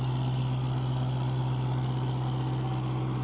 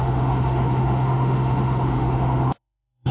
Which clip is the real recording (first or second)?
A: first